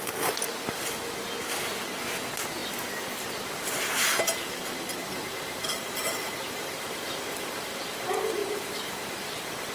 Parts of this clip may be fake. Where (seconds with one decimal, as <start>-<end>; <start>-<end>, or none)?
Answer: 5.0-7.8; 8.4-9.7